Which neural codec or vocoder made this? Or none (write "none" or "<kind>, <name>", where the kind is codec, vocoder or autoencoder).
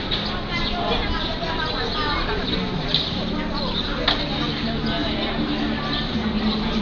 none